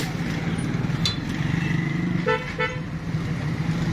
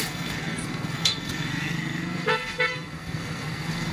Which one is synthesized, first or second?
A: second